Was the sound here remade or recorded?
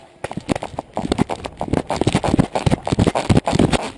recorded